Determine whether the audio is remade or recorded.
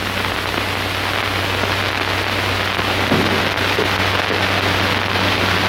recorded